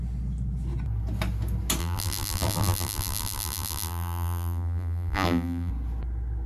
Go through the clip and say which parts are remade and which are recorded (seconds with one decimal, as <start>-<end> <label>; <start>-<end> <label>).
0.0-1.8 recorded; 1.8-5.7 remade; 5.7-6.5 recorded